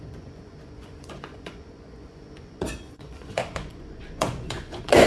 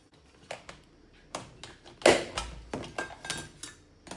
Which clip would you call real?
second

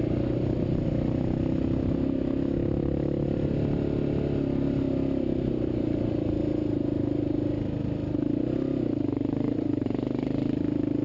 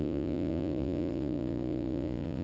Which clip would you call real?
first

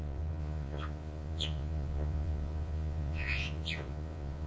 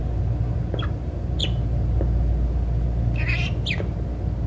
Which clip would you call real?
second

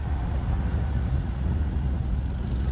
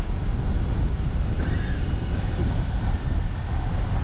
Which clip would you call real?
second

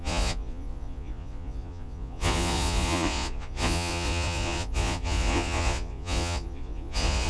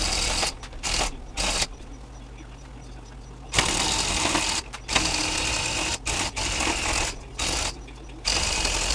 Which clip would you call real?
second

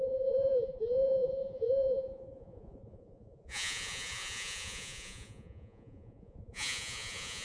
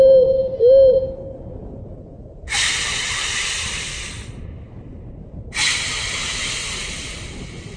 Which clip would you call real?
second